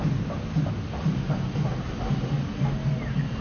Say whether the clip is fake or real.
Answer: real